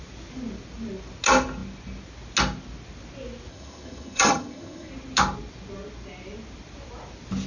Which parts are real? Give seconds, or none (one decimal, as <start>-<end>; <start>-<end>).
0.0-3.5; 4.9-7.5